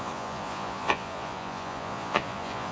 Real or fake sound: fake